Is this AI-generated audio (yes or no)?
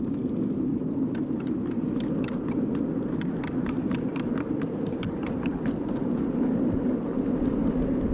no